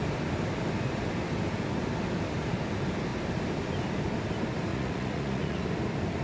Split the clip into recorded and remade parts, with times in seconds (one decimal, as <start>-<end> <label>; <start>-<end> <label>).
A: 0.0-4.7 recorded; 4.7-5.6 remade; 5.6-6.2 recorded